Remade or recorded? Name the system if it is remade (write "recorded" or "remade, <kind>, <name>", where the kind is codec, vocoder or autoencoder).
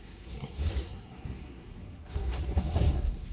remade, codec, SNAC